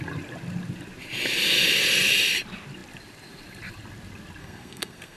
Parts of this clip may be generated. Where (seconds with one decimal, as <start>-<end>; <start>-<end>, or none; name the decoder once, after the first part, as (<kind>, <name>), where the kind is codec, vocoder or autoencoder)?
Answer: 4.4-5.2 (codec, SNAC)